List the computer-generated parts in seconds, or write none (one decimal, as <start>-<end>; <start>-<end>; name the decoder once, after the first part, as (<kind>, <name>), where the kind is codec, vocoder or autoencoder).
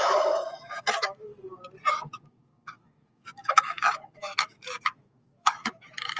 0.0-1.3 (autoencoder, DAC-VAE); 1.9-6.2